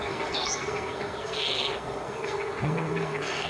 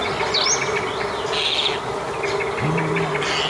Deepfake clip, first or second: first